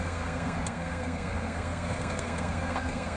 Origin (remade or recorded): remade